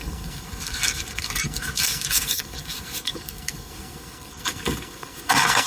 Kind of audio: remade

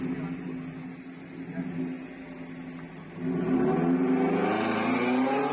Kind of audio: recorded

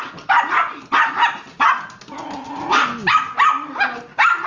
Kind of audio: recorded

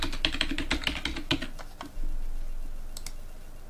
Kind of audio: recorded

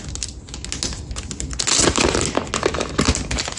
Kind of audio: recorded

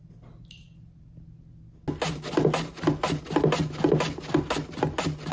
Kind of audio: recorded